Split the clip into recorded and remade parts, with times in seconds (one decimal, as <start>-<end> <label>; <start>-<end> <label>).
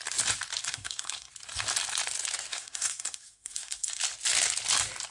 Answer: 0.0-0.6 recorded; 0.6-1.3 remade; 1.3-2.5 recorded; 2.5-4.0 remade; 4.0-5.1 recorded